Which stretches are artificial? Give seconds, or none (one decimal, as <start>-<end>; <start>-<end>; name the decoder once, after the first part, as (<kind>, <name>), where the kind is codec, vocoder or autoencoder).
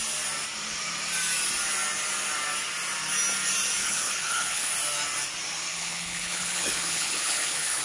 3.8-4.7 (codec, HILCodec); 5.7-7.8